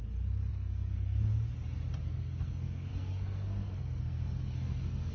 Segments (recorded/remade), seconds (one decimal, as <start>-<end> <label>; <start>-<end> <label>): 0.0-0.5 recorded; 0.5-1.3 remade; 1.3-2.0 recorded; 2.0-5.1 remade